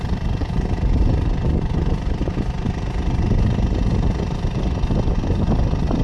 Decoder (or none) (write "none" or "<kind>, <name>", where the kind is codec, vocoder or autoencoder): none